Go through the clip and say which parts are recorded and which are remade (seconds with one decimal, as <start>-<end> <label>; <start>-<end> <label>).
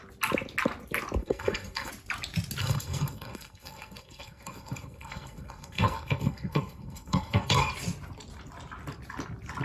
0.0-1.2 recorded; 1.2-1.9 remade; 1.9-2.6 recorded; 2.6-7.7 remade; 7.7-9.6 recorded